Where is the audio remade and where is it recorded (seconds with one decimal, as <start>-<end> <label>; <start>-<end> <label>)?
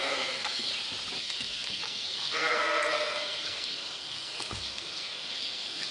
0.0-0.7 remade; 0.7-1.2 recorded; 1.2-5.9 remade